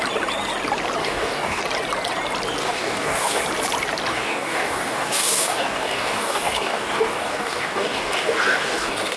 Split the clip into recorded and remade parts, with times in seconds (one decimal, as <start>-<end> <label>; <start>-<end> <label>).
0.0-1.0 recorded; 1.0-1.6 remade; 1.6-2.6 recorded; 2.6-3.4 remade; 3.4-4.1 recorded; 4.1-9.2 remade